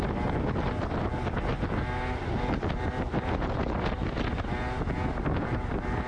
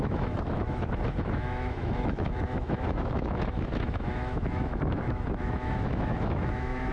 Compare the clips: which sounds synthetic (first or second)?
second